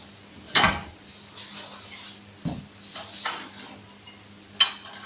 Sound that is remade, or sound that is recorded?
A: recorded